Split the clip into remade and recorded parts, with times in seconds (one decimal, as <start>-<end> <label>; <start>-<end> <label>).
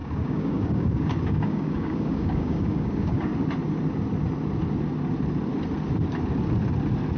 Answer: 0.0-3.3 remade; 3.3-7.2 recorded